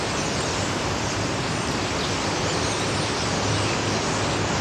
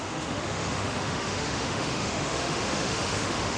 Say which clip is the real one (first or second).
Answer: first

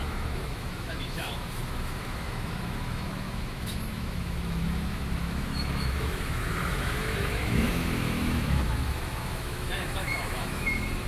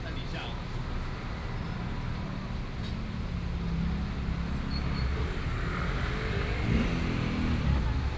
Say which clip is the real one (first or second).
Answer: second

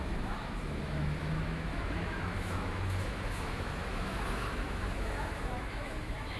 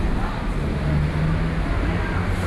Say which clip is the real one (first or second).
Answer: second